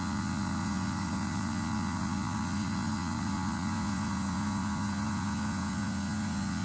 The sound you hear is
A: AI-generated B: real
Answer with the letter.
A